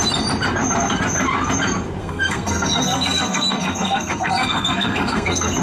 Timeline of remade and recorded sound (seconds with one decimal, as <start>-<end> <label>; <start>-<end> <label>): 0.0-2.0 recorded; 2.0-5.6 remade